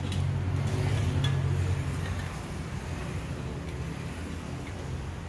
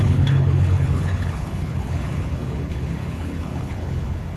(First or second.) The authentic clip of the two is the first